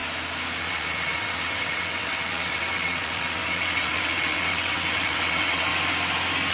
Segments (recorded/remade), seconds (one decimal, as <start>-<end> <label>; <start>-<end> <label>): 0.0-0.6 recorded; 0.6-5.7 remade; 5.7-6.5 recorded

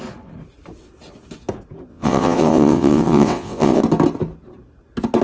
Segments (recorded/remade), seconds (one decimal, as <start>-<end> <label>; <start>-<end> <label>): 0.0-1.9 recorded; 1.9-3.8 remade; 3.8-5.2 recorded